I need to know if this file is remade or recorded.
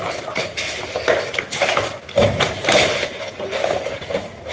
remade